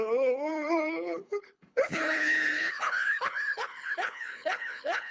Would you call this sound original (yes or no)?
no